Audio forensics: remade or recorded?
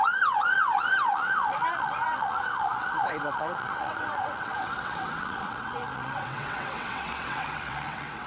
remade